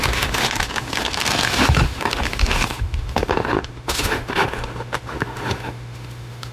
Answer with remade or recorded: remade